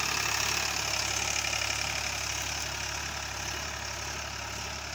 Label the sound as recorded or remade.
recorded